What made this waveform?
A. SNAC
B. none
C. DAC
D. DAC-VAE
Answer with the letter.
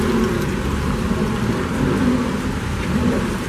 B